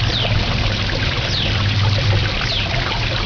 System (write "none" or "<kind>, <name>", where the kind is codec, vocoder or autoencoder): vocoder, BigVGAN v2